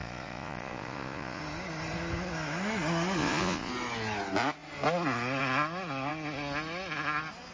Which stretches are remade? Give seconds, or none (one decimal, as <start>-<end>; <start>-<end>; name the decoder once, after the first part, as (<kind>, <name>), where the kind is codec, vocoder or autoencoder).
0.0-1.4 (vocoder, Vocos); 3.2-3.7